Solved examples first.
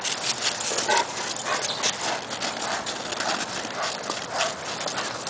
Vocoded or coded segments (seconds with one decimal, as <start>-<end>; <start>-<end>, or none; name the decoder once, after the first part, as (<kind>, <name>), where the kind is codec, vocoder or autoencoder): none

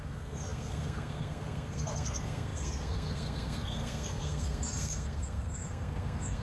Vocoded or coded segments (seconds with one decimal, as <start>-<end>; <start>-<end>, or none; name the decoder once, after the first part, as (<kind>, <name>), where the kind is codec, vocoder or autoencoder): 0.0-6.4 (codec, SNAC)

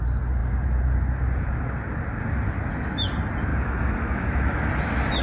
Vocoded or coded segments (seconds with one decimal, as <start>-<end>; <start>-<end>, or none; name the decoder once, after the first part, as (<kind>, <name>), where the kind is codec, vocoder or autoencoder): 3.5-4.7 (autoencoder, DAC-VAE)